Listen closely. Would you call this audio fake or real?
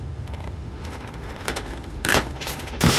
fake